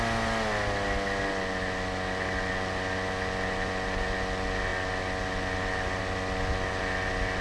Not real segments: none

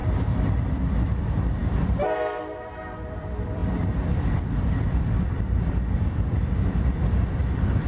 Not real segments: 0.7-1.6; 3.2-7.9

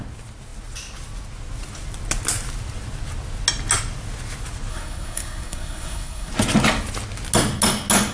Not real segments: 4.7-6.3